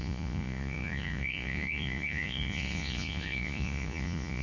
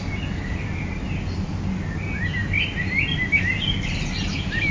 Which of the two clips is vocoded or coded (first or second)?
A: first